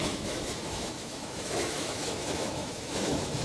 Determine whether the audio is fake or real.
fake